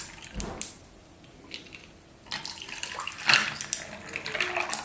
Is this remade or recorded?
recorded